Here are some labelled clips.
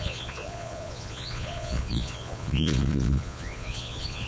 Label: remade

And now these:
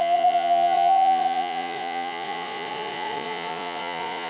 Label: remade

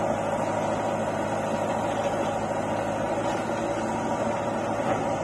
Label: recorded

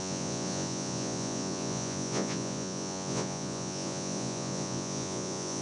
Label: remade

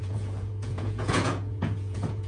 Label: remade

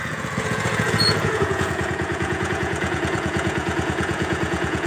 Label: remade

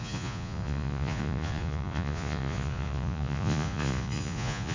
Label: remade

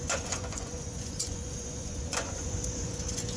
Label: remade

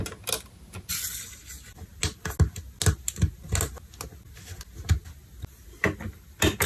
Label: recorded